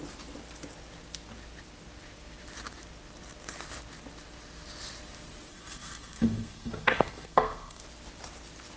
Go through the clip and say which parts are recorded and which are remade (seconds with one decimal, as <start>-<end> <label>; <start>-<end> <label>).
0.0-5.5 recorded; 5.5-7.8 remade; 7.8-8.8 recorded

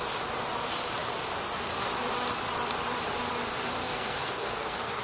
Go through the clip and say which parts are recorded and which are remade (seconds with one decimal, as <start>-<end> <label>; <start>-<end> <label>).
0.0-3.8 recorded; 3.8-5.0 remade

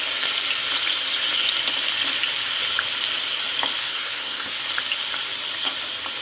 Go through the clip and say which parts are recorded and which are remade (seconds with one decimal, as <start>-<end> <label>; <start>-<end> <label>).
0.0-3.8 recorded; 3.8-4.6 remade; 4.6-6.2 recorded

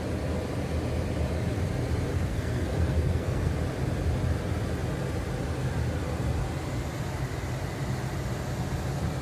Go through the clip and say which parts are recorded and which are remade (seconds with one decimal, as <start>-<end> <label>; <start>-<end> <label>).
0.0-2.1 recorded; 2.1-3.5 remade; 3.5-9.2 recorded

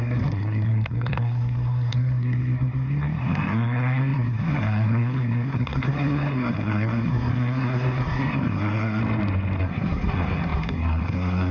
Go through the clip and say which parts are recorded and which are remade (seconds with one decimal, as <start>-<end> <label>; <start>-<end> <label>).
0.0-9.0 remade; 9.0-9.6 recorded; 9.6-11.5 remade

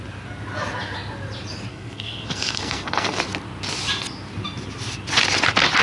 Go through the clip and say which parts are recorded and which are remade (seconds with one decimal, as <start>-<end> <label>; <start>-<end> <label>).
0.0-1.7 recorded; 1.7-3.2 remade; 3.2-5.8 recorded